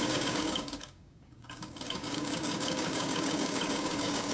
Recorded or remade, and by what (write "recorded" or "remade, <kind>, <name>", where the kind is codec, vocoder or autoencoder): remade, codec, DAC